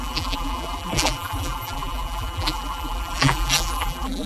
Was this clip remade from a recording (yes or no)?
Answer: yes